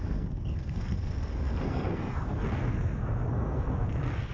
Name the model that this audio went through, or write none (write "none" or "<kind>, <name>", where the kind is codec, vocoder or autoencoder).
codec, SNAC